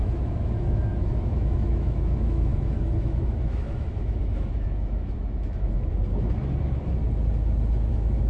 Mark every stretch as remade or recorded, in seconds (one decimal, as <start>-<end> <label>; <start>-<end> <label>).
0.0-5.9 remade; 5.9-7.9 recorded; 7.9-8.3 remade